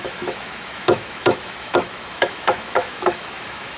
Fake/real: fake